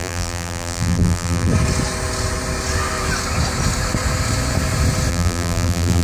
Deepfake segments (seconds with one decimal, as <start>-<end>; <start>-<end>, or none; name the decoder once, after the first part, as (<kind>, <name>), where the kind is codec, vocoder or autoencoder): 0.0-1.5 (vocoder, BigVGAN v2); 5.1-6.0